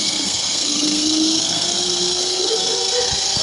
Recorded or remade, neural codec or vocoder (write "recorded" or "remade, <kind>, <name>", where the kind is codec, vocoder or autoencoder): remade, codec, SNAC